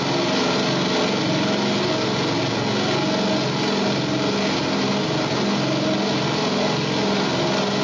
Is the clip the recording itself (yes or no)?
yes